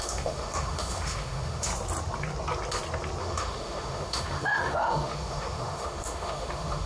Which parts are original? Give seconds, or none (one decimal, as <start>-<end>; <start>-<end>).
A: 1.7-3.2